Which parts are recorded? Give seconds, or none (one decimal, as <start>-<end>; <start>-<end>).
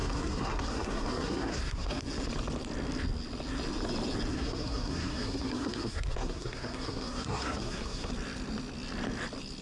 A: 2.0-4.3; 8.1-9.6